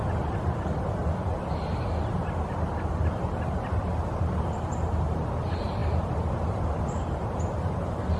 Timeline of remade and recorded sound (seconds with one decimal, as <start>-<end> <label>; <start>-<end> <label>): 0.0-8.2 recorded